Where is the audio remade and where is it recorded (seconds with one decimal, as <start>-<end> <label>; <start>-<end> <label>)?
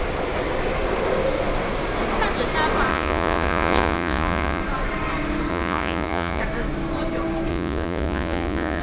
0.0-2.9 recorded; 2.9-4.6 remade; 4.6-5.5 recorded; 5.5-6.4 remade; 6.4-7.5 recorded; 7.5-8.8 remade